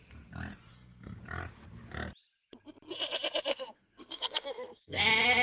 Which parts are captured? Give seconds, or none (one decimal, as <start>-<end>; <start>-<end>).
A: 0.0-0.7; 1.2-3.5; 5.0-5.4